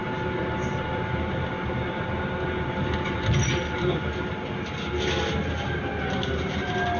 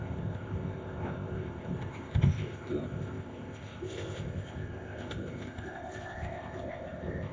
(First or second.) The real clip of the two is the first